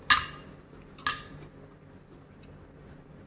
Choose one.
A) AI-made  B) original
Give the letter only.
B